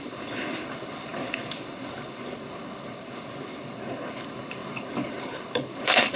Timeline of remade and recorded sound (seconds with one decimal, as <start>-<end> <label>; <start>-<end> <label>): 0.0-6.2 remade